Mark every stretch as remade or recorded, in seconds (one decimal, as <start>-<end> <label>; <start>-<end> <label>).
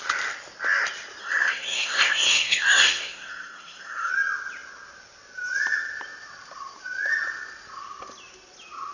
0.0-1.2 recorded; 1.2-4.1 remade; 4.1-8.9 recorded